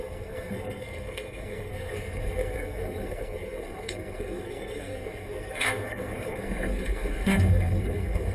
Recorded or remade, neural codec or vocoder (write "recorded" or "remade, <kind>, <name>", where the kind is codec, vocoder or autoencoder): remade, codec, SNAC